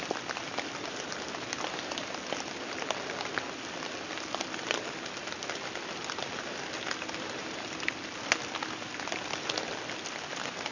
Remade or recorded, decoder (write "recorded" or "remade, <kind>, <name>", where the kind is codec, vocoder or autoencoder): recorded